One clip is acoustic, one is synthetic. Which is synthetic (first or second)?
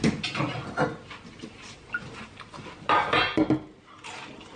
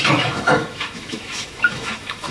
second